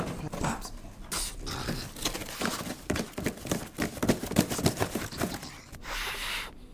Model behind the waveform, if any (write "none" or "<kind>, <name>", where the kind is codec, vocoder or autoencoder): none